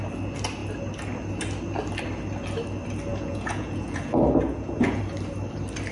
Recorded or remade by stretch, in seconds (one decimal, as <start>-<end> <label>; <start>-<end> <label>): 0.0-3.1 recorded; 3.1-5.0 remade; 5.0-5.9 recorded